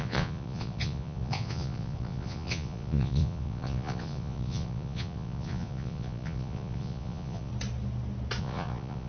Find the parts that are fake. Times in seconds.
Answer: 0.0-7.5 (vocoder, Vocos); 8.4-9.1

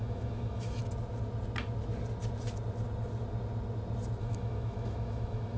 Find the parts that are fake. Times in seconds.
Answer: 0.0-0.8 (autoencoder, DAC-VAE); 4.2-5.6

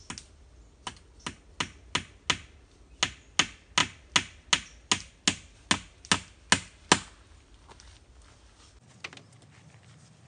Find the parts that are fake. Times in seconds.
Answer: none

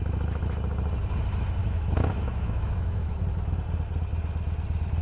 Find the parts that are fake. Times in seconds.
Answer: 1.6-3.2 (autoencoder, DAC-VAE)